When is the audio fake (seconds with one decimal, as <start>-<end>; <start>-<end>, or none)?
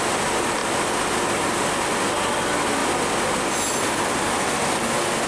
none